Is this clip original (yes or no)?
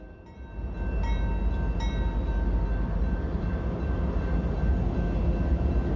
yes